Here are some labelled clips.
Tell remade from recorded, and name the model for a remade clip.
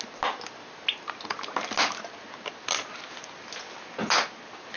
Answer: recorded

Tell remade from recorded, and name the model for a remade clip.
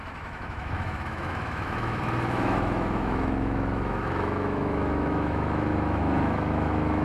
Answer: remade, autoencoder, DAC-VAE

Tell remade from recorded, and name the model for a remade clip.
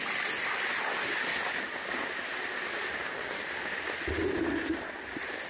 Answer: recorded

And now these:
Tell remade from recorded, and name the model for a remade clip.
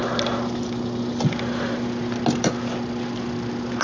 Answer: recorded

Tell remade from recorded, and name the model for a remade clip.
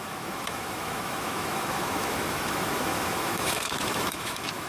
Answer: remade, autoencoder, DAC-VAE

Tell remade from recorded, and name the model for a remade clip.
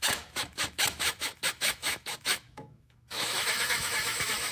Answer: remade, autoencoder, DAC-VAE